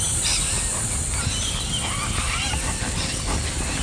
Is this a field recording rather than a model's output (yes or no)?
yes